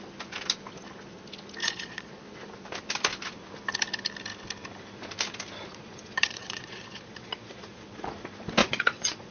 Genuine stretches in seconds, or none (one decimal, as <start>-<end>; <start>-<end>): 0.0-1.6; 2.2-5.7; 8.1-8.6